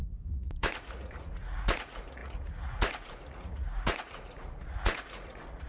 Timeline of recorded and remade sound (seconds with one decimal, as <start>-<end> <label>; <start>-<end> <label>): 0.0-5.7 remade